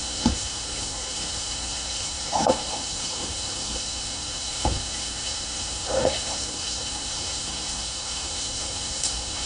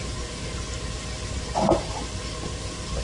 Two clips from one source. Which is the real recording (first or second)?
second